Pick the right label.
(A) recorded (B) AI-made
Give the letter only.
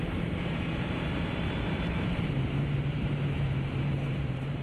B